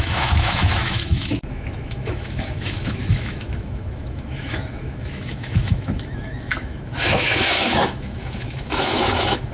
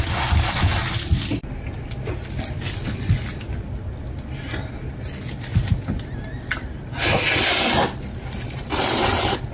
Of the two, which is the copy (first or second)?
first